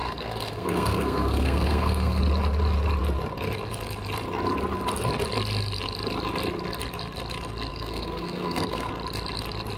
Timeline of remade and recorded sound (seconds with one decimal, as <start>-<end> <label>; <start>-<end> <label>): 0.0-2.2 remade; 2.2-7.7 recorded; 7.7-8.9 remade; 8.9-9.8 recorded